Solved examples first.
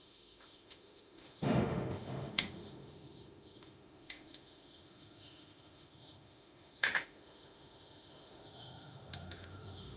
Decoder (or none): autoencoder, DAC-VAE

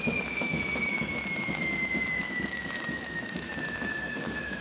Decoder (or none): autoencoder, DAC-VAE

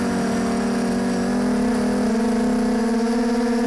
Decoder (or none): none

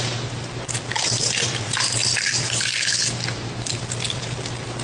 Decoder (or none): none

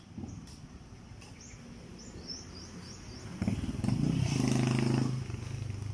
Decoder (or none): none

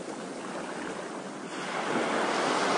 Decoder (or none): none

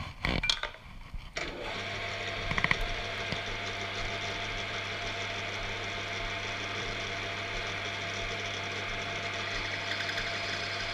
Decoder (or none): none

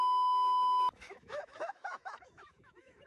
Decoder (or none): autoencoder, DAC-VAE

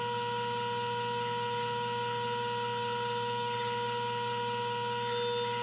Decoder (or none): none